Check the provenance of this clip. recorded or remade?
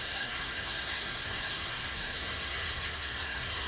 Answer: remade